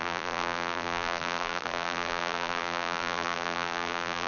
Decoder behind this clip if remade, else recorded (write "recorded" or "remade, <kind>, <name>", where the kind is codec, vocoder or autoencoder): remade, vocoder, BigVGAN v2